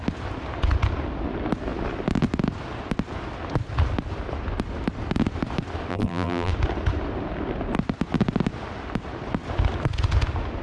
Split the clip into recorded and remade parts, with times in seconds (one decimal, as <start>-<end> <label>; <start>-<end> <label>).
0.0-5.9 recorded; 5.9-6.5 remade; 6.5-10.6 recorded